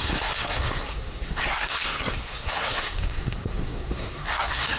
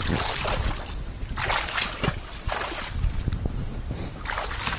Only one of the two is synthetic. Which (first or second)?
first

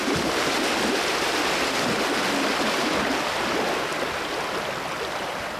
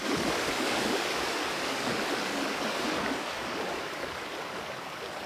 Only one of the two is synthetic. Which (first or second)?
second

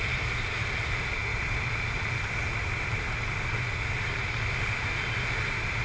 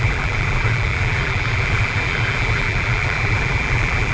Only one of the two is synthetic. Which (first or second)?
second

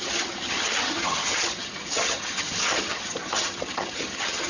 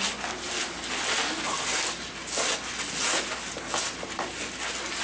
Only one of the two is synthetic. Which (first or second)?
first